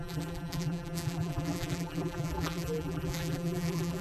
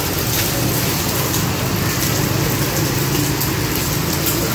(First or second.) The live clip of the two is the second